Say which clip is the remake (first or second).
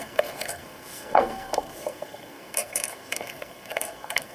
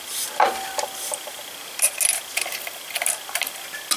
first